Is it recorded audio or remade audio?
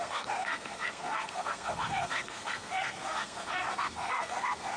remade